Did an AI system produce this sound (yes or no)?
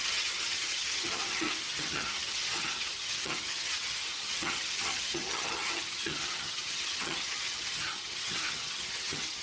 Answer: yes